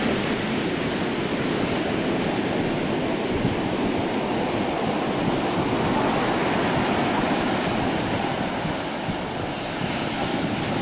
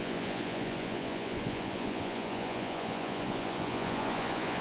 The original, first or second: first